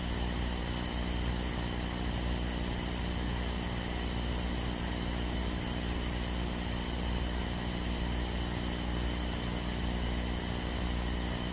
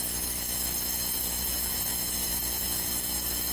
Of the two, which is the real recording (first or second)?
first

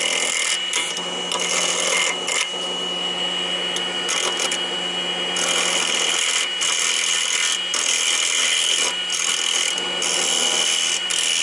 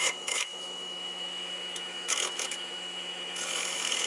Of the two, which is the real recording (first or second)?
first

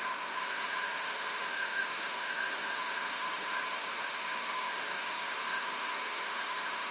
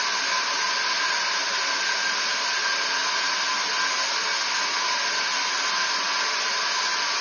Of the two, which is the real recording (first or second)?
second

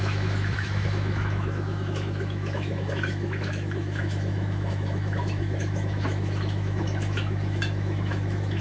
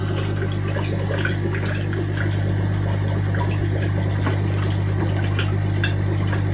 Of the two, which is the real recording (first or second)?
second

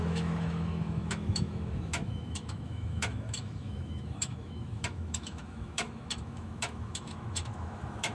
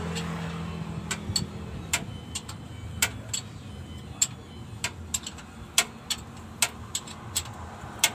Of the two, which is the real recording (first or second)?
second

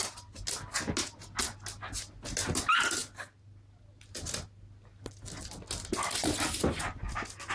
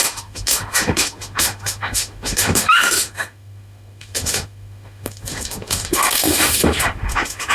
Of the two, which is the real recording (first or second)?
first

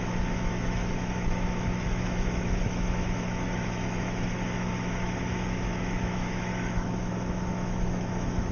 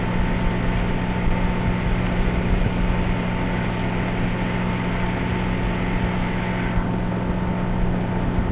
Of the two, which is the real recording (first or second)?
second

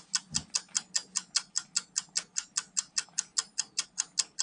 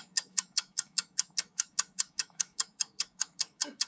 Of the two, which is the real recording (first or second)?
first